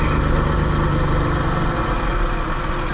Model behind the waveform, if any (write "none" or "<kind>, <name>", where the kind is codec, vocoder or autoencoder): none